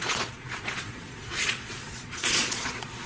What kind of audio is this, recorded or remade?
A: remade